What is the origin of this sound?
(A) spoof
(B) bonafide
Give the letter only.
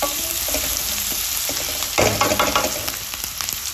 B